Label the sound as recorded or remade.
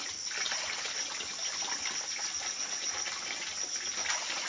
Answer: recorded